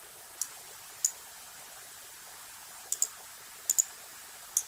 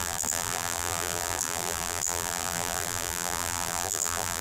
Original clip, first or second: first